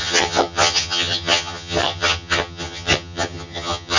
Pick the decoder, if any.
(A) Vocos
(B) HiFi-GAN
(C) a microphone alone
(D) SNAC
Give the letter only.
B